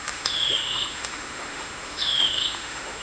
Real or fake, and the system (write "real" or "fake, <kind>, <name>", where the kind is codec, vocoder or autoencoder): fake, autoencoder, DAC-VAE